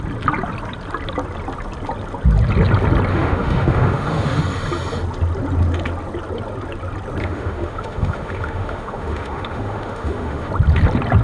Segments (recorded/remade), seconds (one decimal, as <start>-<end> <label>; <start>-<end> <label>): 0.0-3.1 recorded; 3.1-4.4 remade; 4.4-7.2 recorded; 7.2-10.5 remade; 10.5-11.2 recorded